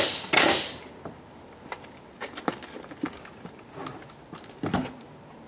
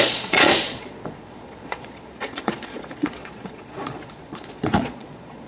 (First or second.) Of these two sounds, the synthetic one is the second